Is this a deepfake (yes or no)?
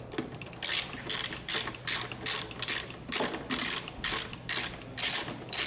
no